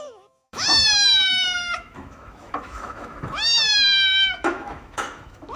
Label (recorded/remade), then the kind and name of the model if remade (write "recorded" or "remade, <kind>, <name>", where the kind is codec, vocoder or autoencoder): remade, autoencoder, DAC-VAE